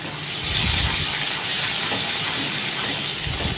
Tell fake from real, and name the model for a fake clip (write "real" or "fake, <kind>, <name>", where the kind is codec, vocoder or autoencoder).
real